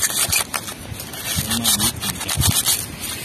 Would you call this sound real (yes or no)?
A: yes